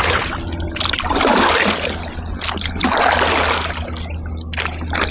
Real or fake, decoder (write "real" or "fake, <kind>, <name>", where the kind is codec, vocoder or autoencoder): real